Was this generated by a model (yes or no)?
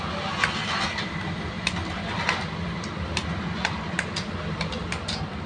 no